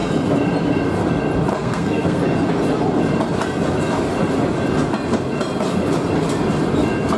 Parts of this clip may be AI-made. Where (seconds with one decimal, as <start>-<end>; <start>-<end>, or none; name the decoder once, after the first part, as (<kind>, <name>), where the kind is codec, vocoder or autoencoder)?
1.5-2.2 (codec, SNAC)